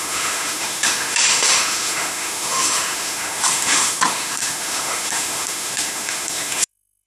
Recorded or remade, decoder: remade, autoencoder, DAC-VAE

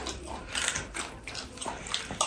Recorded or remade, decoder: recorded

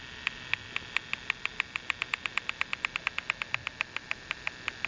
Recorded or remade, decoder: recorded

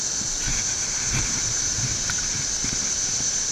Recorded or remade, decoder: recorded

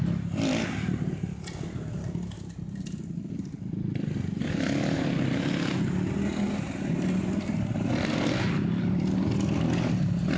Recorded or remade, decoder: recorded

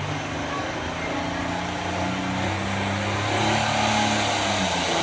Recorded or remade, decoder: recorded